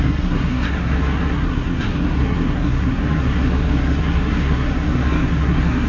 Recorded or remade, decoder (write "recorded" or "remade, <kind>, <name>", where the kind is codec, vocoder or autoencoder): remade, codec, SNAC